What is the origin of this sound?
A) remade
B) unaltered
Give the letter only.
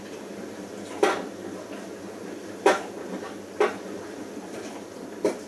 B